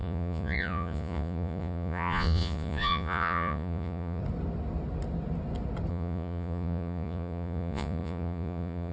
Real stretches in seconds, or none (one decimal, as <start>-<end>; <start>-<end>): 4.2-5.9